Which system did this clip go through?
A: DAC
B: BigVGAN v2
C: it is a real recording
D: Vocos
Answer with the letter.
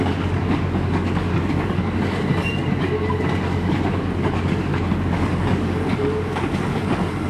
A